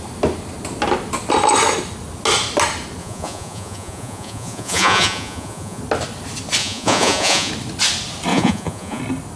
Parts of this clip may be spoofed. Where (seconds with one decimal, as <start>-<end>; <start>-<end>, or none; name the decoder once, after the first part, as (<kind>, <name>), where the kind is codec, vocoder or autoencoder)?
3.0-5.8 (vocoder, Vocos); 6.6-7.5; 8.3-9.0